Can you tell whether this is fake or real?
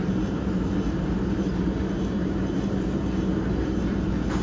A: fake